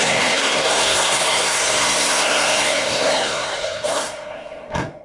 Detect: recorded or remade remade